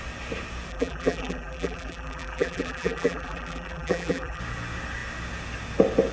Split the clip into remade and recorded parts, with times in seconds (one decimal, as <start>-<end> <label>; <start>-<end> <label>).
0.0-0.7 recorded; 0.7-4.4 remade; 4.4-6.1 recorded